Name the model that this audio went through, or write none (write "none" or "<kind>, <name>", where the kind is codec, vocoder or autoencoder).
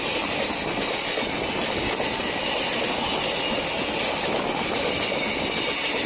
none